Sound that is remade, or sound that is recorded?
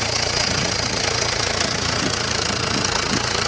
remade